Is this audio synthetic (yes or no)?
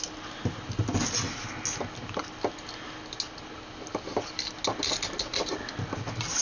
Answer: no